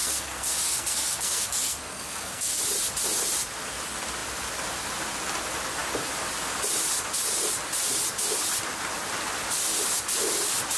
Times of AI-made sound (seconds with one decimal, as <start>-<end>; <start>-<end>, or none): 0.0-2.6